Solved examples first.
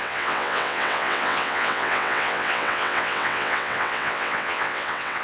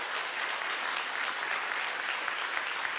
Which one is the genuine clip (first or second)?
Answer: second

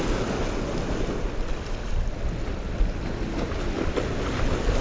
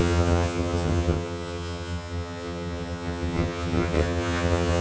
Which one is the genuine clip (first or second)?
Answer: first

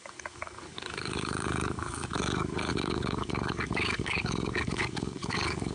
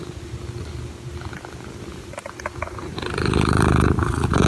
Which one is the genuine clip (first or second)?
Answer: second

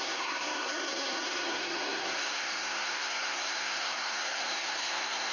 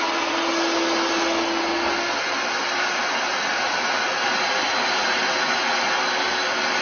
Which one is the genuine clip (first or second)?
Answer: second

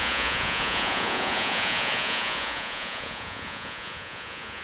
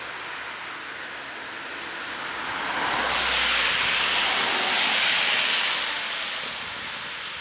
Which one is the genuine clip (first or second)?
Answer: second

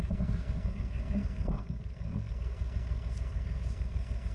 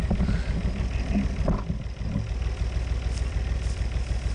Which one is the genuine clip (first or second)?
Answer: second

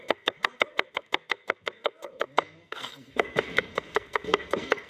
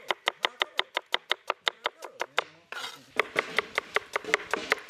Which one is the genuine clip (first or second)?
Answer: second